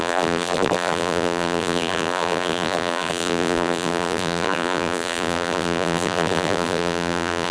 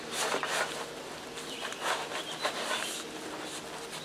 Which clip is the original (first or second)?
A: second